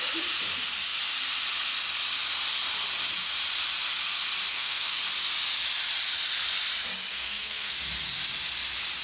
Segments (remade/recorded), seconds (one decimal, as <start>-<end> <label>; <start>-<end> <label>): 0.0-4.5 recorded; 4.5-5.0 remade; 5.0-7.1 recorded; 7.1-7.7 remade; 7.7-9.0 recorded